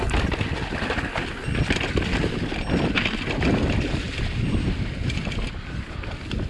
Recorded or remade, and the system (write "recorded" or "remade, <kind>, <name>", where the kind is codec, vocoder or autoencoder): recorded